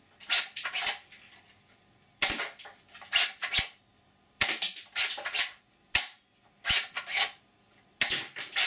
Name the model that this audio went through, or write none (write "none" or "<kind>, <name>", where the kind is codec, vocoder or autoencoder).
none